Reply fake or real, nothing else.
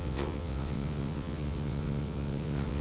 fake